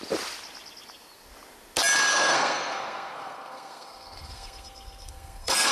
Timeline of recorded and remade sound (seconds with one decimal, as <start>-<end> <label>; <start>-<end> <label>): 0.0-2.1 recorded; 2.1-5.7 remade